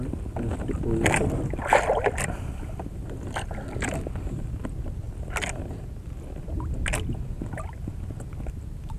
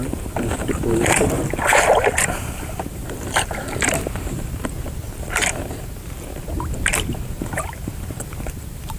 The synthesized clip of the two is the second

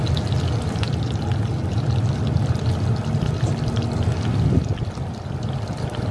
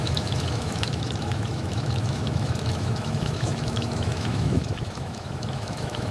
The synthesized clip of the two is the second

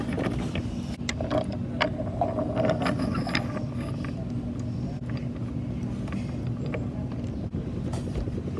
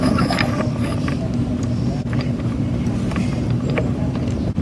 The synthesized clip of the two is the second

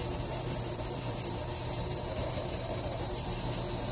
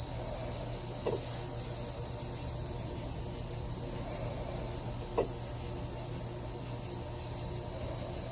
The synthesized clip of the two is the first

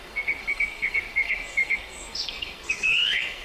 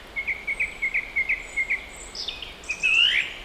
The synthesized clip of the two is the first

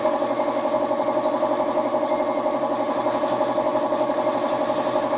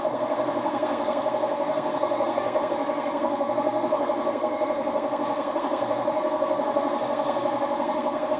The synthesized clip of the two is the second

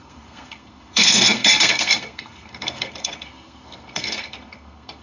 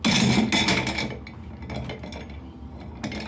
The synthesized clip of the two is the first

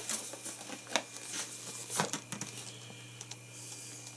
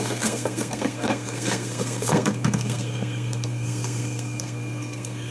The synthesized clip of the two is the second